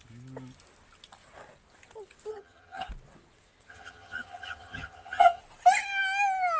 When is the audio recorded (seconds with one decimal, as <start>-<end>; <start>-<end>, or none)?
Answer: 0.0-2.3; 2.9-3.7; 5.4-6.6